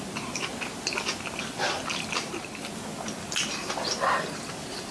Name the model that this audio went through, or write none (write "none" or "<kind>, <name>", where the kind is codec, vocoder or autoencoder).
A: vocoder, BigVGAN v2